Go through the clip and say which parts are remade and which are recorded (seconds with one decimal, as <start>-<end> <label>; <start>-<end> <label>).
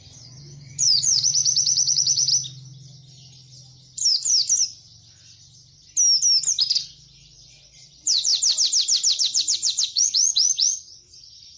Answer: 0.0-2.3 remade; 2.3-6.8 recorded; 6.8-8.3 remade; 8.3-9.2 recorded; 9.2-11.6 remade